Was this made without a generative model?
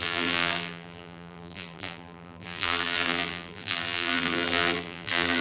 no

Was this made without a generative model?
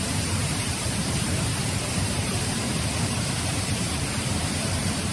no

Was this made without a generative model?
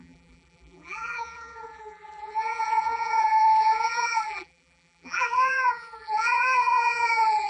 no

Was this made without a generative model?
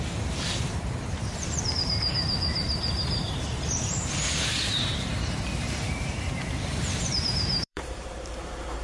no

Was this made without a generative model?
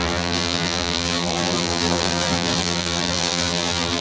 no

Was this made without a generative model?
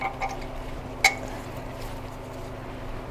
yes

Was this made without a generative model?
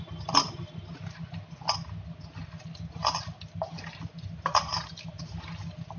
yes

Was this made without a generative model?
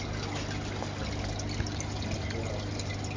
yes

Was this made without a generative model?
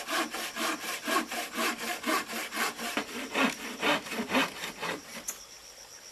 yes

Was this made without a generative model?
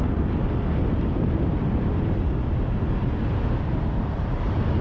yes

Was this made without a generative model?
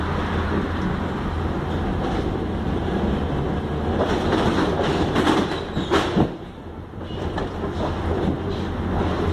yes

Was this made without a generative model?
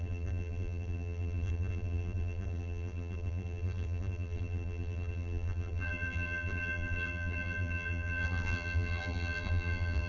no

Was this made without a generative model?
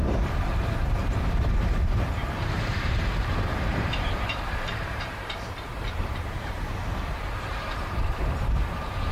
no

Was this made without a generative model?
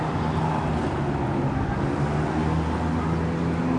yes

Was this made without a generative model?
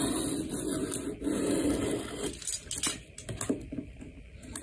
yes